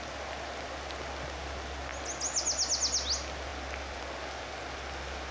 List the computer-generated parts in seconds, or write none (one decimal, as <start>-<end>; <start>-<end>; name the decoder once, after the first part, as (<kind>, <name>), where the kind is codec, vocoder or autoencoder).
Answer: none